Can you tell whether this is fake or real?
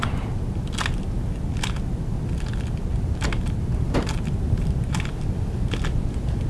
real